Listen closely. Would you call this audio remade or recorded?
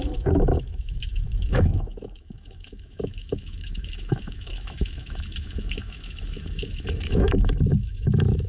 remade